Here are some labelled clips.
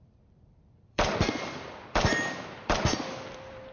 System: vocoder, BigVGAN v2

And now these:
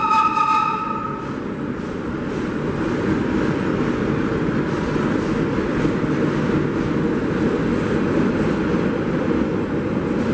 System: none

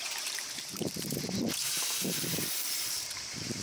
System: vocoder, BigVGAN v2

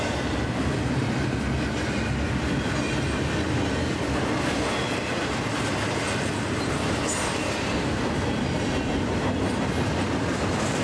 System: none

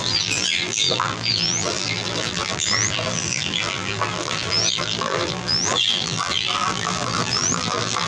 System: vocoder, BigVGAN v2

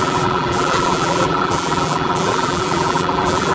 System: vocoder, BigVGAN v2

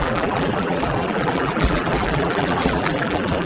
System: vocoder, BigVGAN v2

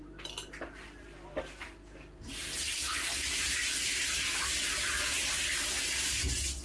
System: none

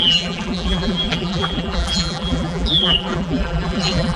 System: vocoder, BigVGAN v2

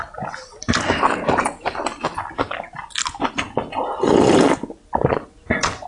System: none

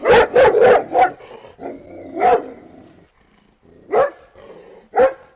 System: none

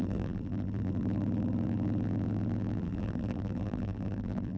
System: vocoder, BigVGAN v2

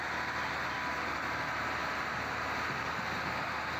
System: none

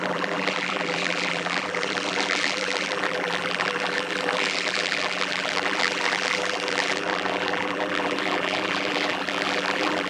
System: vocoder, BigVGAN v2